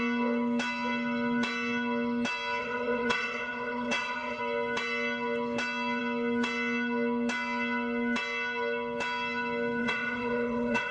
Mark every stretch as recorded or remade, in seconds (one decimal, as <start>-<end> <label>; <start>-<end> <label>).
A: 0.0-2.6 recorded; 2.6-4.4 remade; 4.4-9.8 recorded; 9.8-10.9 remade